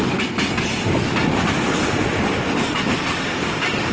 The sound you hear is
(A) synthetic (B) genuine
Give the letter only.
B